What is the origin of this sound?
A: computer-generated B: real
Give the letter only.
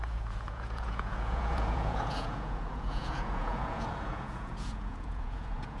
A